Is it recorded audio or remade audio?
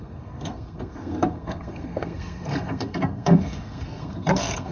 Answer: remade